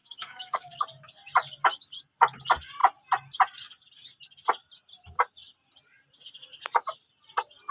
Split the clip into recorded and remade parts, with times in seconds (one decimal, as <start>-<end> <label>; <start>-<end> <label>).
0.0-0.8 remade; 0.8-7.7 recorded